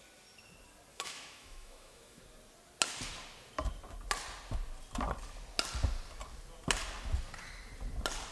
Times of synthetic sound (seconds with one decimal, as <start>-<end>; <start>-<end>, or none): 0.9-2.2

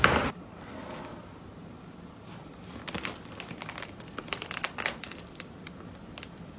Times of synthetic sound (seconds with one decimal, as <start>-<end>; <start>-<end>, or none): 0.0-1.1; 2.2-6.6

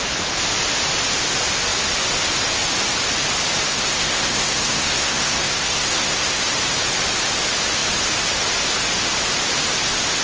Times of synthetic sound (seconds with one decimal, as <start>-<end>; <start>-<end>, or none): 3.7-6.4

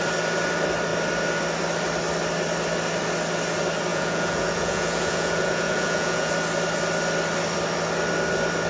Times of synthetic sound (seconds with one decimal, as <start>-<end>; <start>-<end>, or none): 3.9-6.3

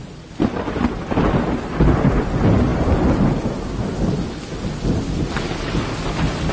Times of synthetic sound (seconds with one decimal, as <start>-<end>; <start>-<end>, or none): none